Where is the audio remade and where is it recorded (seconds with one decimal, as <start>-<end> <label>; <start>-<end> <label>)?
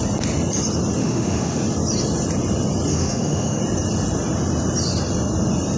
0.0-1.0 recorded; 1.0-1.6 remade; 1.6-2.9 recorded; 2.9-3.6 remade; 3.6-5.8 recorded